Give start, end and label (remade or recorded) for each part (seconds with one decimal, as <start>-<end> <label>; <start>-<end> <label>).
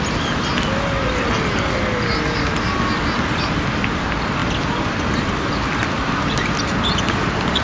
0.0-7.6 recorded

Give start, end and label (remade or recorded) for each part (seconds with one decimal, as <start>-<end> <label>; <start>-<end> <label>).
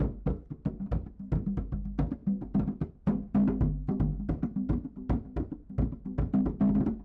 0.0-7.0 recorded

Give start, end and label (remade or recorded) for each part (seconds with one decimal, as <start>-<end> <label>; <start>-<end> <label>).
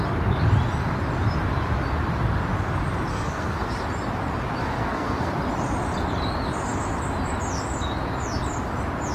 0.0-3.1 recorded; 3.1-3.7 remade; 3.7-4.6 recorded; 4.6-5.3 remade; 5.3-9.1 recorded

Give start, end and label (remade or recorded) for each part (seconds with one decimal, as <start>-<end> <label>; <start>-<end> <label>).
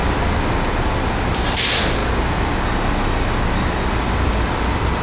0.0-5.0 recorded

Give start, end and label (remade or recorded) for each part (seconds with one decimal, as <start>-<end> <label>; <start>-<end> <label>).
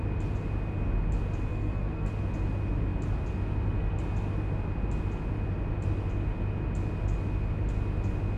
0.0-1.5 recorded; 1.5-2.1 remade; 2.1-8.4 recorded